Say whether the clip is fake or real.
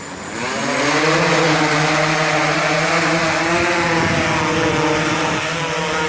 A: real